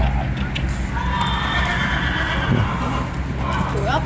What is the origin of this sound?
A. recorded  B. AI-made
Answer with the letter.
A